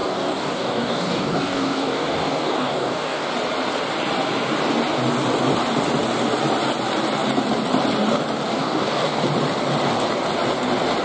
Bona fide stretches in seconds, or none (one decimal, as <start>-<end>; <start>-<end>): 3.3-8.5; 9.2-11.0